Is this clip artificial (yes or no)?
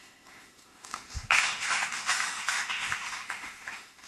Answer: yes